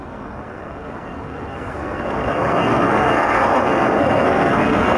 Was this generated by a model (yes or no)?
yes